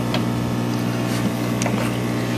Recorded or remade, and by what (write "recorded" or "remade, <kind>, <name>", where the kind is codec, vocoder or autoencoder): recorded